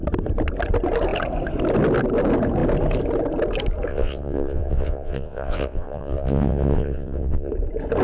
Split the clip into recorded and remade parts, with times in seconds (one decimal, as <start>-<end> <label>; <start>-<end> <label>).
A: 0.0-3.9 recorded; 3.9-7.5 remade; 7.5-8.0 recorded